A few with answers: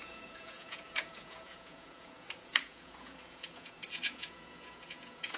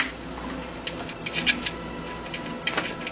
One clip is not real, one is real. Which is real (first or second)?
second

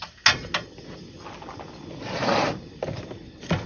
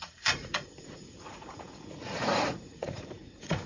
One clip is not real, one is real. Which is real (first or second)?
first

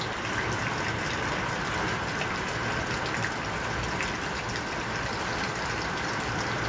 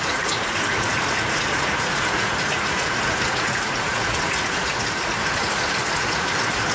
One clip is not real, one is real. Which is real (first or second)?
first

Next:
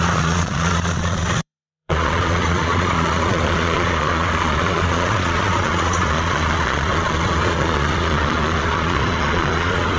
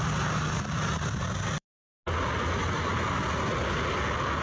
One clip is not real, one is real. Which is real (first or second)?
second